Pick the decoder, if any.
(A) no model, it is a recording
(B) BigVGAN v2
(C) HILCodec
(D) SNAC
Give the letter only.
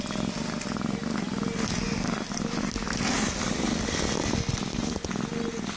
A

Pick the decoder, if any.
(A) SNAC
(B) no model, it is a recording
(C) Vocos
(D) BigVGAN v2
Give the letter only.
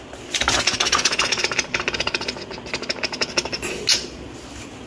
B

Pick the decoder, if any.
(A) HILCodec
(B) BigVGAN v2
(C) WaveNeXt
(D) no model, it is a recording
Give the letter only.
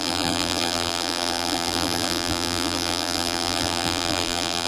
B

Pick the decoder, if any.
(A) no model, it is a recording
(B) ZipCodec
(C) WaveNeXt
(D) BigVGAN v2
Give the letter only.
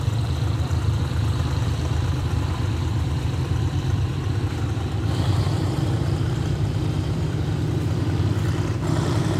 D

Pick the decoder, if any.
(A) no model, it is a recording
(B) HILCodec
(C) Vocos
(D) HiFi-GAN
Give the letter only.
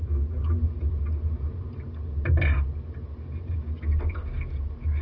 A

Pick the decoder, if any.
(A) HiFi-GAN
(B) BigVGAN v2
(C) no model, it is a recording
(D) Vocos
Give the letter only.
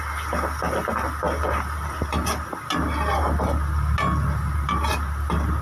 C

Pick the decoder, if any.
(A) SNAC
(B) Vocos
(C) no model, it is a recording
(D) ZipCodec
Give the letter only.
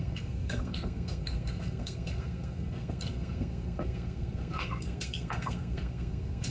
A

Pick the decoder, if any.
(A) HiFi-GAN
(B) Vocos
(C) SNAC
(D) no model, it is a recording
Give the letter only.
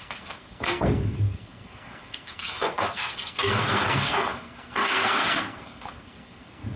C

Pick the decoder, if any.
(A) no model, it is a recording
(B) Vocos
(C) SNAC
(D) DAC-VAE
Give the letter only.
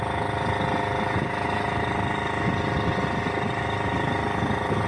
A